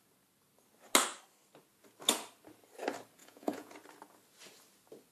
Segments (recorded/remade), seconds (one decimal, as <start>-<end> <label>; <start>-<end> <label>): 0.0-3.2 recorded; 3.2-3.7 remade; 3.7-5.1 recorded